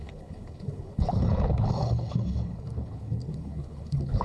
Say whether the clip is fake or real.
fake